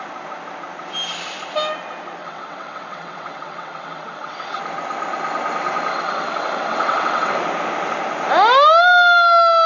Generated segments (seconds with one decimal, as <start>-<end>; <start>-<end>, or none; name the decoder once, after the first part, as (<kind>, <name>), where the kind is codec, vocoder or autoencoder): 2.2-4.6 (vocoder, WaveNeXt); 5.9-7.3

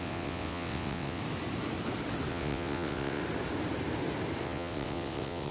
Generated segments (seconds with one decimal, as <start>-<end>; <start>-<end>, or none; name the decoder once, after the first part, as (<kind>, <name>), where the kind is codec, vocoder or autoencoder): 0.0-1.2 (vocoder, WaveNeXt); 2.3-3.2; 4.4-5.5